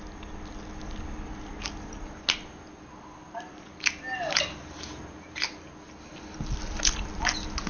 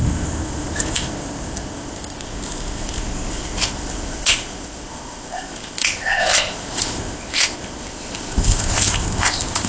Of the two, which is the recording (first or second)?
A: first